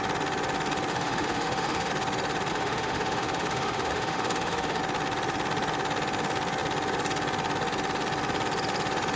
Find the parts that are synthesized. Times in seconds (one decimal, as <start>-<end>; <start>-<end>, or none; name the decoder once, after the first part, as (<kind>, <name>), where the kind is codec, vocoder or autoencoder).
0.9-1.9 (autoencoder, DAC-VAE); 2.5-4.8